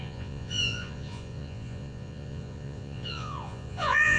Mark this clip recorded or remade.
remade